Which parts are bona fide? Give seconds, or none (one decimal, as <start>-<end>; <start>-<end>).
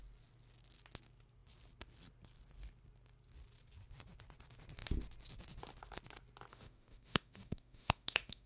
0.0-6.5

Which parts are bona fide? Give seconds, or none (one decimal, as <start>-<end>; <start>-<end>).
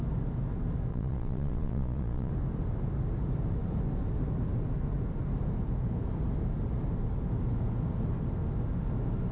0.0-0.9; 2.3-9.3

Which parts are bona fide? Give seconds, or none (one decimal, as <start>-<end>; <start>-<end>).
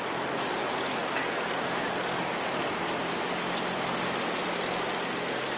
0.0-5.6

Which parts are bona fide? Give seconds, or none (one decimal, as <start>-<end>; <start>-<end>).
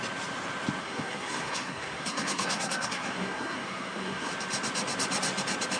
0.0-0.8; 4.3-5.8